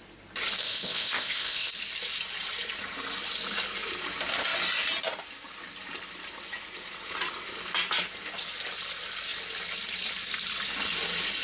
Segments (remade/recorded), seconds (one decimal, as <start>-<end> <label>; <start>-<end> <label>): 0.0-0.6 recorded; 0.6-1.7 remade; 1.7-11.4 recorded